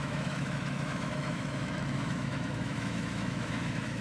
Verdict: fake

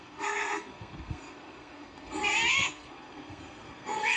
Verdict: fake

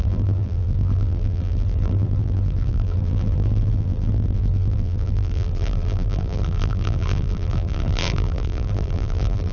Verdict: fake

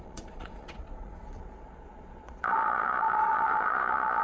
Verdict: fake